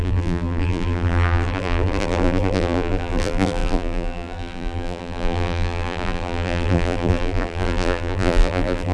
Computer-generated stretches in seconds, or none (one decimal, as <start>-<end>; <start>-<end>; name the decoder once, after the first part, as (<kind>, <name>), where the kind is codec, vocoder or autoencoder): 0.0-8.9 (vocoder, BigVGAN v2)